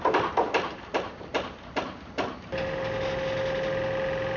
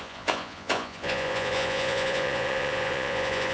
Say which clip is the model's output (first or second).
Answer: second